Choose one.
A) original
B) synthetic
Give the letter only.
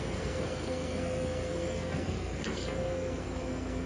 B